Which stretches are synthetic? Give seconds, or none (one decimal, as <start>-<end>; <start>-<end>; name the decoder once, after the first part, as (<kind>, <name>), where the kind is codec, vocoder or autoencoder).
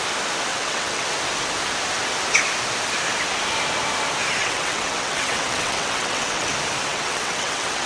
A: 0.5-1.1 (vocoder, WaveNeXt); 4.4-6.5; 6.9-7.9